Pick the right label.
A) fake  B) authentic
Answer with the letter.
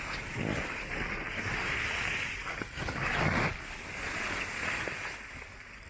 B